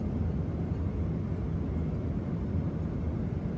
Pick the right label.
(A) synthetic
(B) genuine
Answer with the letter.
B